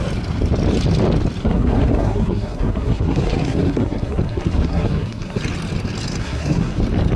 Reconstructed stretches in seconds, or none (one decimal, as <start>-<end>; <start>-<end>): 1.4-5.4; 6.2-6.8